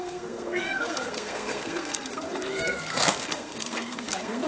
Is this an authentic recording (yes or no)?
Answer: no